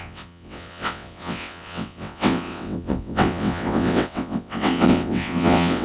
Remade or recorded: remade